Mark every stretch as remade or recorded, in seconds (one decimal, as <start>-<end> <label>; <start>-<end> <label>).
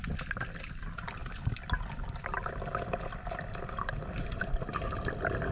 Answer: 0.0-5.5 recorded